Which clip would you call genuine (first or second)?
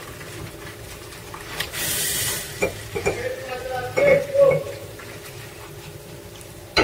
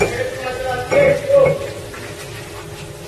second